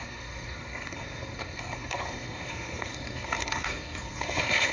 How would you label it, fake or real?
fake